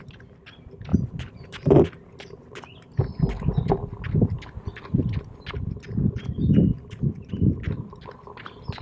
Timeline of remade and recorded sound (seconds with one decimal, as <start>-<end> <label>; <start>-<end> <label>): 0.0-0.9 recorded; 0.9-1.7 remade; 1.7-8.8 recorded